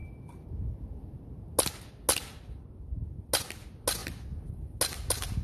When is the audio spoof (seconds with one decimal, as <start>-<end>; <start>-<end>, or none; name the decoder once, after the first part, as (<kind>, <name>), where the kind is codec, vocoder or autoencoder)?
none